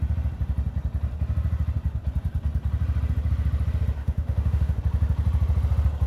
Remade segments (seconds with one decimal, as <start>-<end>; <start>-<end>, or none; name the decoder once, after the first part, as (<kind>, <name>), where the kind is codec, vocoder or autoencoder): 4.0-4.8 (autoencoder, DAC-VAE)